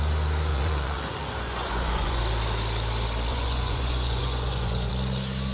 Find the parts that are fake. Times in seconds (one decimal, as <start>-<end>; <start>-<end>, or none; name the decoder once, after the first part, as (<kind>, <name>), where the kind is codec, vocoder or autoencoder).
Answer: 0.5-2.2 (vocoder, Vocos); 3.3-4.9

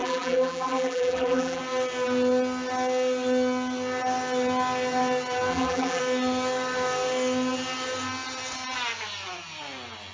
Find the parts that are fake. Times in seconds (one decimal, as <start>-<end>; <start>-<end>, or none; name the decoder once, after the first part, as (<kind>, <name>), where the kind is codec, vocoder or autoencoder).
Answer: 0.0-1.6 (vocoder, BigVGAN v2); 5.5-6.0

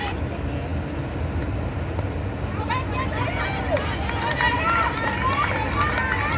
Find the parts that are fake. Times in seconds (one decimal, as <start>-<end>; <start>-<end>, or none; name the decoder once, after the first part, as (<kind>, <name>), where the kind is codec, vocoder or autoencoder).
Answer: none

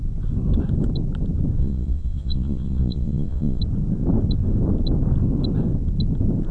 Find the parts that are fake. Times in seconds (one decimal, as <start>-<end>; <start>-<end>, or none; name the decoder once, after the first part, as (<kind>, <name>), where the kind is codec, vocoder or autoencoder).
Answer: 1.6-3.6 (vocoder, Vocos)

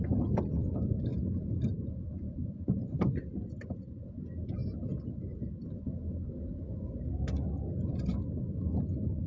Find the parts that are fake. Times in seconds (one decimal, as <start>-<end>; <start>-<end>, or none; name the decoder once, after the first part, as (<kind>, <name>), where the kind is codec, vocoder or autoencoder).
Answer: 1.1-3.2 (vocoder, BigVGAN v2)

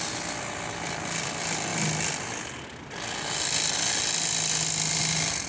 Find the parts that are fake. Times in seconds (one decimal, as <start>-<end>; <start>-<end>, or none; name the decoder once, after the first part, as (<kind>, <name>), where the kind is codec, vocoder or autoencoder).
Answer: none